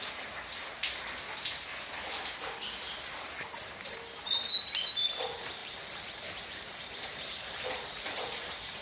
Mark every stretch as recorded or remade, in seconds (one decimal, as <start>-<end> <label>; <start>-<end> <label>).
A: 0.0-0.8 remade; 0.8-5.1 recorded; 5.1-8.8 remade